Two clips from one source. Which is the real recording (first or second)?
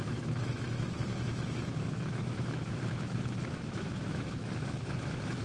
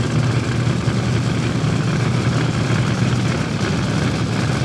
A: second